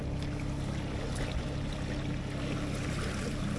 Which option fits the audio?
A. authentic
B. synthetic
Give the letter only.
A